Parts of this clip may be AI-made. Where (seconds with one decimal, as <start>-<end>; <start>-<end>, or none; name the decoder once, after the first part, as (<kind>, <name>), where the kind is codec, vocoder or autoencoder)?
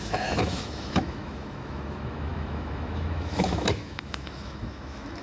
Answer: 0.0-5.2 (autoencoder, DAC-VAE)